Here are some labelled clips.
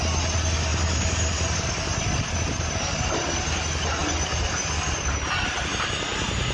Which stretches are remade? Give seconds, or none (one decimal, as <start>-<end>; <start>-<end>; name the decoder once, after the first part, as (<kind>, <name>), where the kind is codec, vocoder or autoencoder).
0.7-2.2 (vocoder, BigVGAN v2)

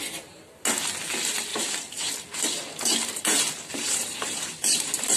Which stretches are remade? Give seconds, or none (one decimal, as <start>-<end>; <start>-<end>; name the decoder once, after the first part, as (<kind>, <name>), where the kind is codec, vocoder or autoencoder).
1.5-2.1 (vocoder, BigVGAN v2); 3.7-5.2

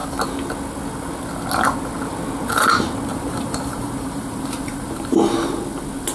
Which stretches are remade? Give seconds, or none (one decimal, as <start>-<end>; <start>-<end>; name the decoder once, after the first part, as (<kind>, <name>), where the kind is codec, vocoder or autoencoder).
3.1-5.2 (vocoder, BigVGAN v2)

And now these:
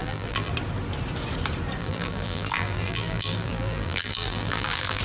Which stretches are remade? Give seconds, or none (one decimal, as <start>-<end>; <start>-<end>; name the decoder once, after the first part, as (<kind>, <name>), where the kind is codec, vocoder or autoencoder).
0.0-0.5 (vocoder, BigVGAN v2); 1.8-5.0

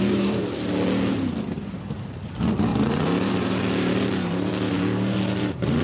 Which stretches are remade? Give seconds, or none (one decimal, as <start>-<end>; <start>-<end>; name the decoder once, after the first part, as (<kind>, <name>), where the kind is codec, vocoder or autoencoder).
0.0-0.4 (vocoder, BigVGAN v2); 1.8-5.8

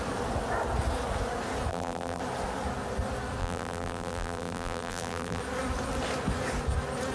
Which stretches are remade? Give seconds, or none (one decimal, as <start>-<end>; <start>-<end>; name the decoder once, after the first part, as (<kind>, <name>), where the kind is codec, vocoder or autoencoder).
1.7-2.2 (vocoder, BigVGAN v2); 3.4-5.4